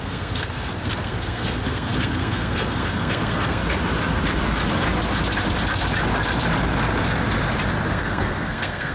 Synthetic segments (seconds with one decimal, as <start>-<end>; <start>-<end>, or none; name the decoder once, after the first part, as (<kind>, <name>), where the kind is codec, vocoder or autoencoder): 0.0-3.6 (codec, SNAC); 7.9-8.9